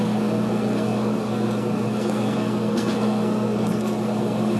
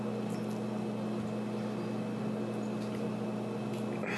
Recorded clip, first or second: second